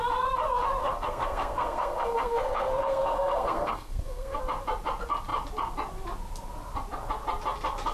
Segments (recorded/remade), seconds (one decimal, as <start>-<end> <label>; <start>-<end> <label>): 0.0-0.8 recorded; 0.8-4.4 remade; 4.4-7.9 recorded